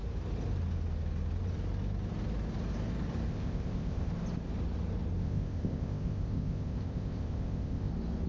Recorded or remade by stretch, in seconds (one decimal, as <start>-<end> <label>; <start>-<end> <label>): 0.0-3.3 recorded; 3.3-4.1 remade; 4.1-5.2 recorded; 5.2-7.9 remade; 7.9-8.3 recorded